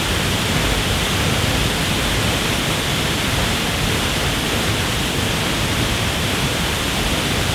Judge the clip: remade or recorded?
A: remade